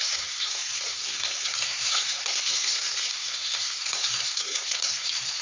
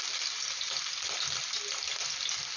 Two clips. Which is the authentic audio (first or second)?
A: second